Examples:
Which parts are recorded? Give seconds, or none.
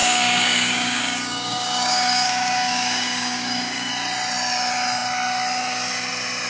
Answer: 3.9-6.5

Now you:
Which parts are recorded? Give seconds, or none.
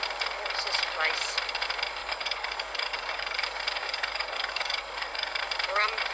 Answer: 0.0-2.0; 3.4-3.8; 5.4-6.1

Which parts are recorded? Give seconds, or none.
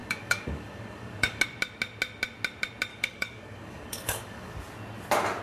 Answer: 1.4-2.9; 4.5-5.4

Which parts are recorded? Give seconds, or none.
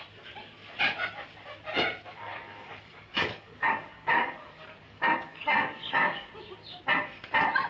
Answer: 0.0-2.1; 6.3-7.7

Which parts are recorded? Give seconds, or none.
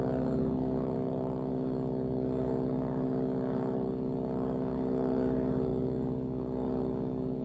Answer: none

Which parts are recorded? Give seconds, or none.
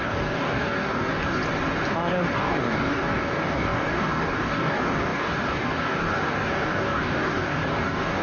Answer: 1.4-2.4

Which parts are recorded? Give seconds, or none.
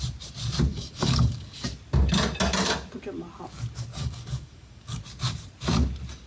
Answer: 0.0-0.7; 1.7-3.9; 5.0-6.3